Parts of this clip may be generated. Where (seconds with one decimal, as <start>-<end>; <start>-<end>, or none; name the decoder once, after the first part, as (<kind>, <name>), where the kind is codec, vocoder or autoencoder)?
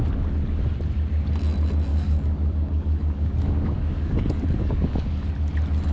1.9-5.3 (codec, DAC)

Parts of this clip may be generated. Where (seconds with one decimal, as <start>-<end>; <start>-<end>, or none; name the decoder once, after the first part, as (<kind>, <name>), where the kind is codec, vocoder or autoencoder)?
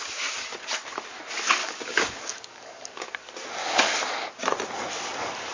1.6-3.1 (codec, DAC); 3.6-4.4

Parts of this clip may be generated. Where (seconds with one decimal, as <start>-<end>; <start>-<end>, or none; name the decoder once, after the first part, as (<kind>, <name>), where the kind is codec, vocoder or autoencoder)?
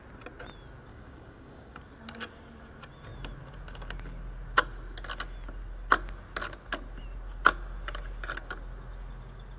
0.9-1.8 (codec, DAC)